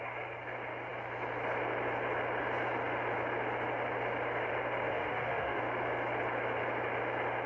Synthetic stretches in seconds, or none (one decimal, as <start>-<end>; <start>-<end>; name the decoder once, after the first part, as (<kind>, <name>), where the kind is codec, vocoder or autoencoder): 4.9-5.6 (autoencoder, DAC-VAE)